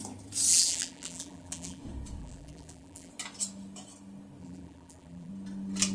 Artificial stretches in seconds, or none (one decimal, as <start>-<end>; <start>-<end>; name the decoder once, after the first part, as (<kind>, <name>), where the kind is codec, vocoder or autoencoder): 0.5-1.8 (vocoder, BigVGAN v2); 2.2-3.1; 4.4-5.3